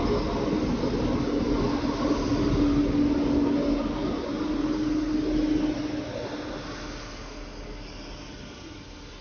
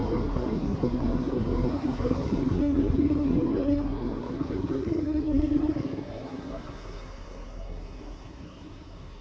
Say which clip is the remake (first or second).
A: second